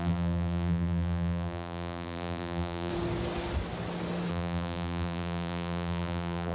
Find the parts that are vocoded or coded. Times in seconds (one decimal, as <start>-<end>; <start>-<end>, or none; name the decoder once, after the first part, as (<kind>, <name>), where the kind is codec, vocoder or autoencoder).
0.0-2.9 (vocoder, BigVGAN v2); 4.3-6.5

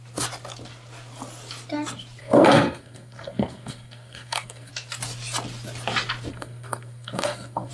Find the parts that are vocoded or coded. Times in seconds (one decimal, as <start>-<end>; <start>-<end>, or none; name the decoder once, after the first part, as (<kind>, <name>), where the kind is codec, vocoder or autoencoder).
2.2-4.7 (codec, SNAC); 6.3-7.7